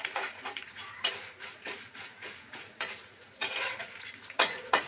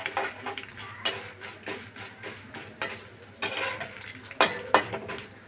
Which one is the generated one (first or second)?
first